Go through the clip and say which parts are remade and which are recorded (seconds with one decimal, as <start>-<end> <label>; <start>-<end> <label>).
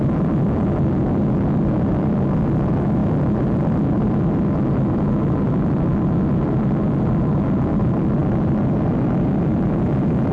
0.0-10.3 recorded